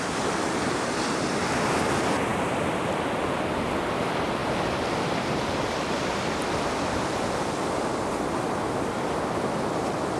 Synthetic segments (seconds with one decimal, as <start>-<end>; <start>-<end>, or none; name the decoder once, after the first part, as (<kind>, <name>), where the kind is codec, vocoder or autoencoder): 4.4-8.8 (vocoder, BigVGAN v2)